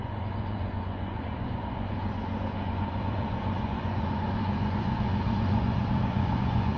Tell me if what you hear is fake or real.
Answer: fake